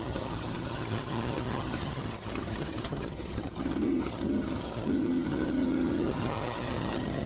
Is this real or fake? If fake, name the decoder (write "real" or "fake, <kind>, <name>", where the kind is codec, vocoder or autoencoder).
fake, vocoder, HiFi-GAN